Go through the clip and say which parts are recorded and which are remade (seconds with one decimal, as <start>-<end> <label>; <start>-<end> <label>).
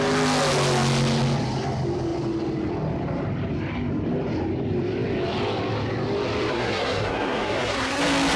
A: 0.0-6.5 recorded; 6.5-8.0 remade; 8.0-8.4 recorded